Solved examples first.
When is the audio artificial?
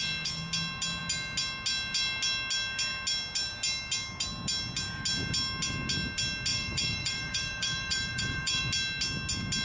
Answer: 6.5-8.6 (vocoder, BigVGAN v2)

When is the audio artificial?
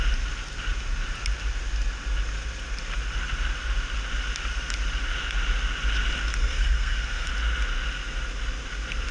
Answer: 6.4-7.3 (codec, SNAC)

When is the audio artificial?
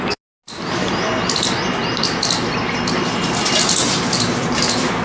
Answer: none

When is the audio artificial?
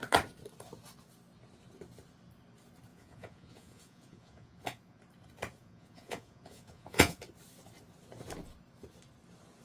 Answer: 2.9-5.0 (vocoder, Vocos); 5.6-7.2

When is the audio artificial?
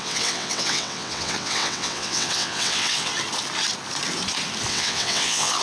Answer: 0.0-3.1 (vocoder, WaveNeXt); 4.7-5.6